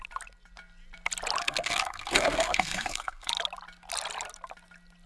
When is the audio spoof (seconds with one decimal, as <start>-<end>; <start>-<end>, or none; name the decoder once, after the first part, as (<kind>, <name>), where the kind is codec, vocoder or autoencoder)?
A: 1.4-3.3 (codec, SNAC)